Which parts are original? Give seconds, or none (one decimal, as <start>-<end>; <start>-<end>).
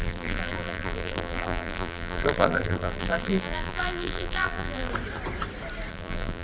4.9-5.9